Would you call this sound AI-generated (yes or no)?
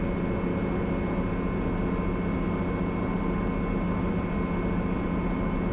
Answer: no